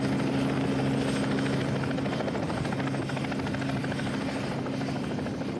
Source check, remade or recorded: recorded